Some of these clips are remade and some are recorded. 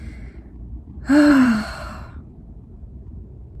remade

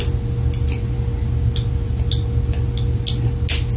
recorded